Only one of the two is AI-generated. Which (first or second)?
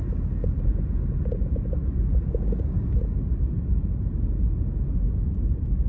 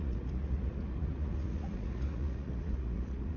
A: second